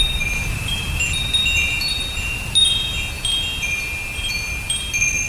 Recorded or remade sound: recorded